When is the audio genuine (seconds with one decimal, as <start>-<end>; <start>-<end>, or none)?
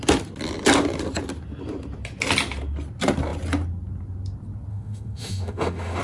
0.0-4.7